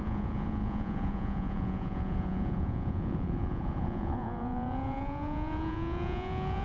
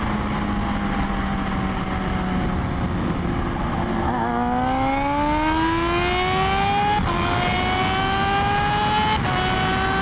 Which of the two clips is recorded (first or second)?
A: second